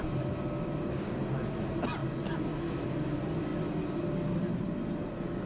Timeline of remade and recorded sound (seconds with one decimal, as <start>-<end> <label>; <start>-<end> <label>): 0.0-5.5 recorded